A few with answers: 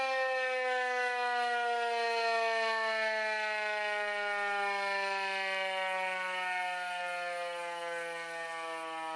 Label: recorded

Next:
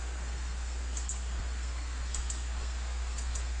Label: remade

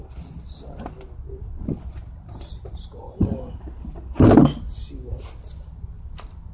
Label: recorded